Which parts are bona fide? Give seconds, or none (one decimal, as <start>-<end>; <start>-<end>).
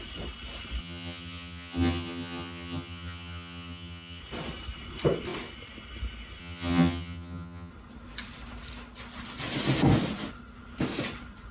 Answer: 0.0-0.8; 4.2-6.4; 7.7-11.5